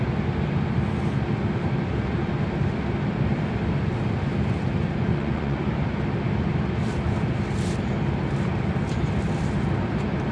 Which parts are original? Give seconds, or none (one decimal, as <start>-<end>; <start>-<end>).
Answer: 0.0-5.1; 5.7-10.3